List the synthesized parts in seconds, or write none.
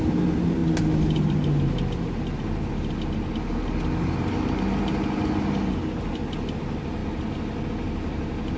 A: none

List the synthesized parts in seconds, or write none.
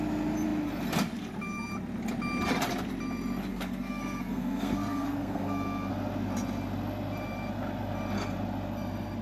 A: 3.5-5.9 (codec, SNAC)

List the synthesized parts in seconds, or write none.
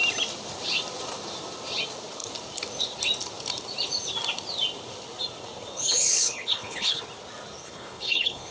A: 5.7-7.0 (codec, HILCodec); 7.6-8.5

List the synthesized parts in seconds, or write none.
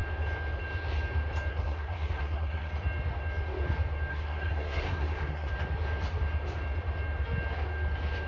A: 1.5-2.7 (codec, SNAC); 4.1-5.5